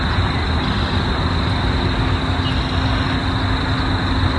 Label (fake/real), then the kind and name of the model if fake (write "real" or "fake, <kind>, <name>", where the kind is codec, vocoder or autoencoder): real